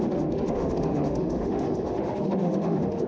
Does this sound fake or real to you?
fake